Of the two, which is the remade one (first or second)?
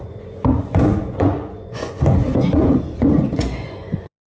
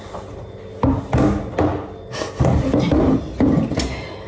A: first